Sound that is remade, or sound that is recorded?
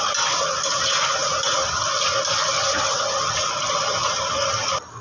recorded